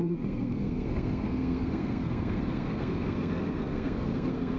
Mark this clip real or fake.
fake